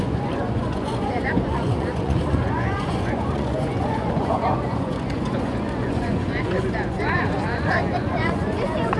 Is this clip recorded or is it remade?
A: remade